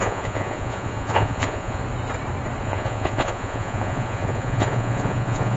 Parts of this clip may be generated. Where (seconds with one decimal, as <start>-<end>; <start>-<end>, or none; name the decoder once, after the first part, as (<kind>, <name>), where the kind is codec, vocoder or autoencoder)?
0.0-1.8 (vocoder, Vocos); 2.6-5.6